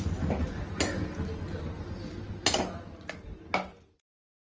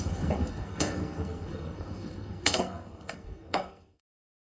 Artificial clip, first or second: second